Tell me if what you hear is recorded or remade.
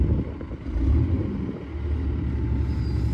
recorded